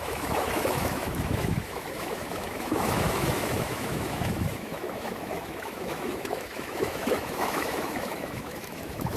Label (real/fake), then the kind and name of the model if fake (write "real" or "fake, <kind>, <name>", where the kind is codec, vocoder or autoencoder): fake, autoencoder, DAC-VAE